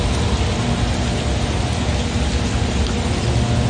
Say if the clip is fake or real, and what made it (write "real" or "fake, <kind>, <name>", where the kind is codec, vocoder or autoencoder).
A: real